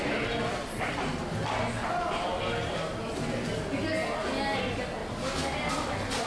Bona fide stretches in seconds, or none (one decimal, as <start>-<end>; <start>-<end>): 0.0-6.3